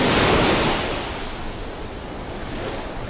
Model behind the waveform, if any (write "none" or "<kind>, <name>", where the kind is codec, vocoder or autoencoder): none